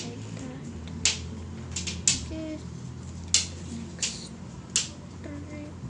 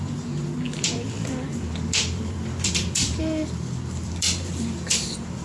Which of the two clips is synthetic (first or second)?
second